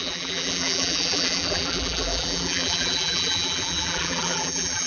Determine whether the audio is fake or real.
fake